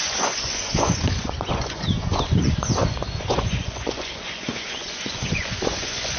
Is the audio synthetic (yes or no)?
yes